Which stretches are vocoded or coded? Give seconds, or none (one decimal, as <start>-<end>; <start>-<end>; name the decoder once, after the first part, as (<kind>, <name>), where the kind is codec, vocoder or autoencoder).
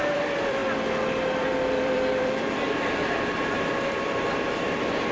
0.0-0.6 (vocoder, BigVGAN v2); 1.3-5.1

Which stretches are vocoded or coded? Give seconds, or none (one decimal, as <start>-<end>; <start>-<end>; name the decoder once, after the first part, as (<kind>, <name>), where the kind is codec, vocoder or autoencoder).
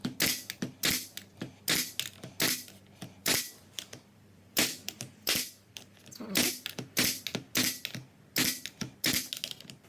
3.2-7.2 (vocoder, BigVGAN v2)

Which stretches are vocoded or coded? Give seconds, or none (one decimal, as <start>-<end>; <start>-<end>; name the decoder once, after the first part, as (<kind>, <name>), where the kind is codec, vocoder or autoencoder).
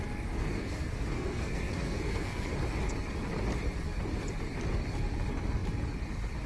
0.4-2.5 (codec, SNAC)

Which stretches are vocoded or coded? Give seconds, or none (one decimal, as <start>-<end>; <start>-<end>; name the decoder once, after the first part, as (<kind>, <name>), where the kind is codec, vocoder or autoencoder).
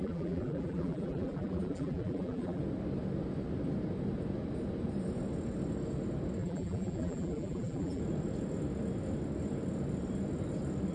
0.0-2.6 (vocoder, BigVGAN v2); 6.4-8.0